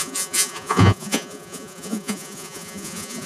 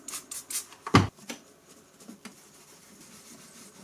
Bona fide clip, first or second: second